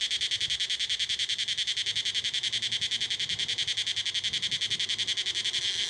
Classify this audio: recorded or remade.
recorded